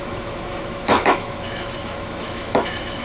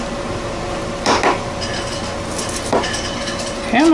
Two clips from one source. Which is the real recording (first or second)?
second